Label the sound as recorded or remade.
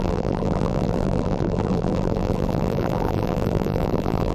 remade